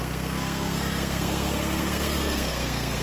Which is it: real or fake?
fake